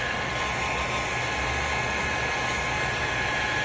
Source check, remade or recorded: recorded